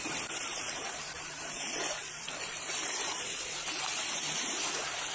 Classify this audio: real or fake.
fake